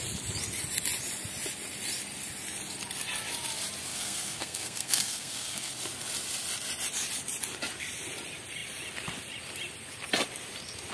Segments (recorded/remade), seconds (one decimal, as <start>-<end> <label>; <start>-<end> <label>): 0.0-3.9 recorded; 3.9-5.7 remade; 5.7-10.9 recorded